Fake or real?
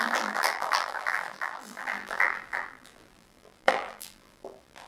fake